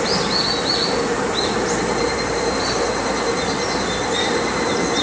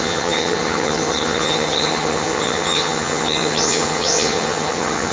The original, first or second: first